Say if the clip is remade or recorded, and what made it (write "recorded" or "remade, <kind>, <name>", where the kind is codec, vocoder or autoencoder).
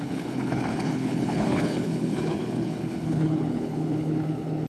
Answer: remade, codec, HILCodec